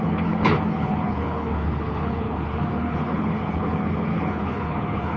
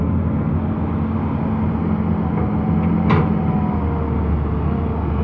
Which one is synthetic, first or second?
first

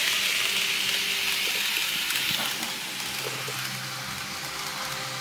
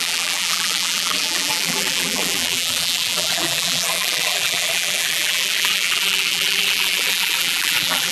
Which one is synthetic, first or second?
second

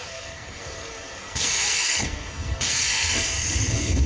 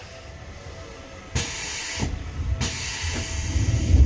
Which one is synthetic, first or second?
first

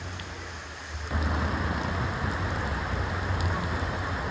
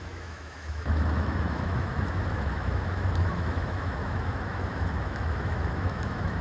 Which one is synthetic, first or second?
second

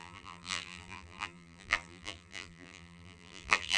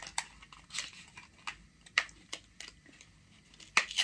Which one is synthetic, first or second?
first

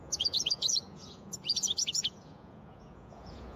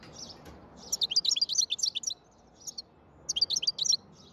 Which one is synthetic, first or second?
first